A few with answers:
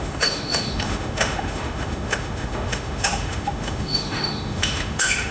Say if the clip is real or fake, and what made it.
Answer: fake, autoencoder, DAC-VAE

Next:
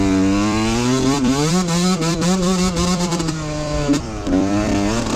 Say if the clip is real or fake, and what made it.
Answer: fake, vocoder, BigVGAN v2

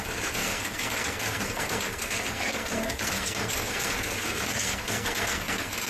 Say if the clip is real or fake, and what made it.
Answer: fake, codec, SNAC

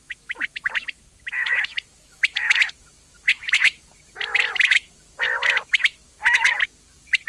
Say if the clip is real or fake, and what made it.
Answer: fake, autoencoder, DAC-VAE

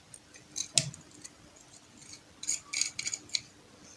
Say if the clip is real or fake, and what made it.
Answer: real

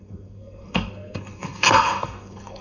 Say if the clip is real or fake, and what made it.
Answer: fake, codec, SNAC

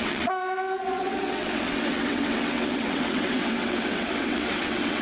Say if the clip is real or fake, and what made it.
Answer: fake, vocoder, WaveNeXt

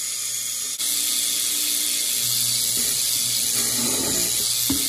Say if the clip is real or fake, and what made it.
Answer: real